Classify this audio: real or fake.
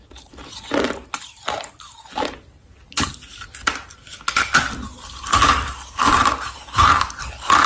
fake